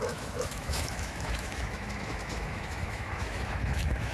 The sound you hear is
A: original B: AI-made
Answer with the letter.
B